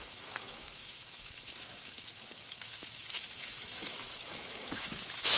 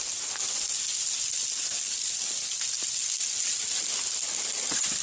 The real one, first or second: second